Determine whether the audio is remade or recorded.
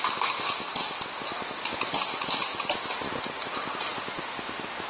recorded